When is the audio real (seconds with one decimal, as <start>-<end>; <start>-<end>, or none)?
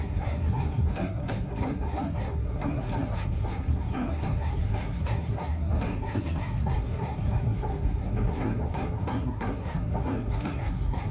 none